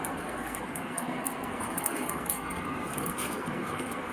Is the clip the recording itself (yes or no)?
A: no